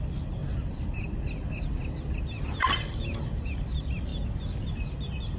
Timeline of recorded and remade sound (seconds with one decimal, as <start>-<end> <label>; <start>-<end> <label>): 0.0-5.4 recorded